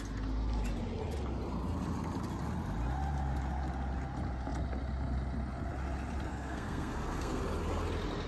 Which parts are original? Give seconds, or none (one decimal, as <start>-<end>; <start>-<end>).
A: 0.0-6.3; 7.4-8.3